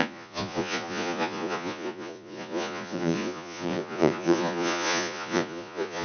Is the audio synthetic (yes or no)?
yes